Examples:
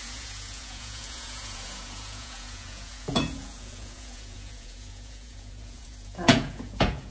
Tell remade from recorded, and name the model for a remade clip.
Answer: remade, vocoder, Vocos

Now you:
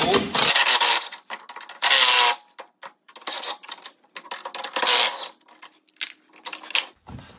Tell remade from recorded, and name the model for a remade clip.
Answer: recorded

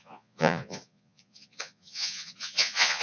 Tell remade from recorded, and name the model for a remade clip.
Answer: remade, vocoder, Vocos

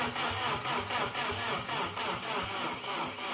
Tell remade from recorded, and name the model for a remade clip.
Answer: recorded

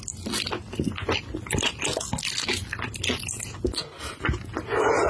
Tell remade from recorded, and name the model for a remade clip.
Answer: recorded